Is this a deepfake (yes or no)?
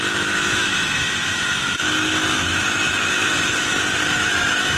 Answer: yes